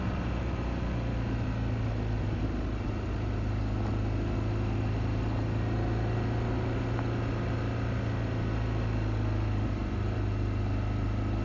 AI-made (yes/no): no